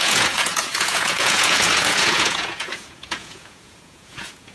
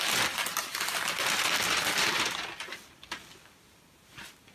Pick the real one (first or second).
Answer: second